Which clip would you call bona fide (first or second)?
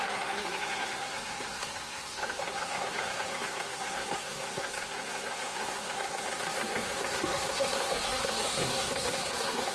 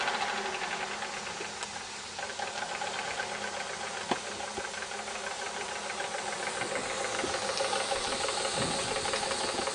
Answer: second